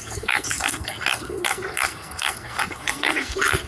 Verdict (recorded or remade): remade